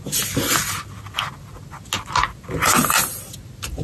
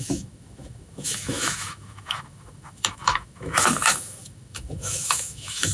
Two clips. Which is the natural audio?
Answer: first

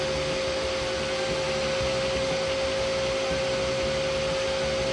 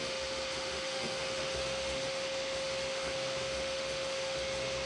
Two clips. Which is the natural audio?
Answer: first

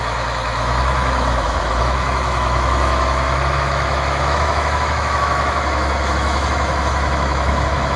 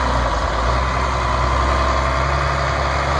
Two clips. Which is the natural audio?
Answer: second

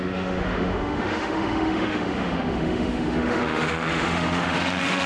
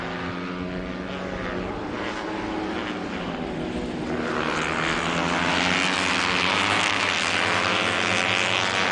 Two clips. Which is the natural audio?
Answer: second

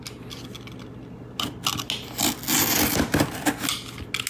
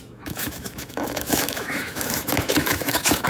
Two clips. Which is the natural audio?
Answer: first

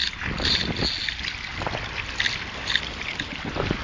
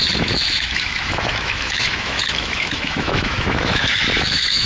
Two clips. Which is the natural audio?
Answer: first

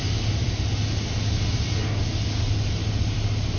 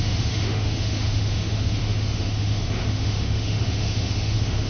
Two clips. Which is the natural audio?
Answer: first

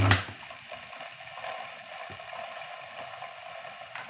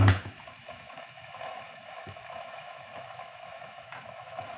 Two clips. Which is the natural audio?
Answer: first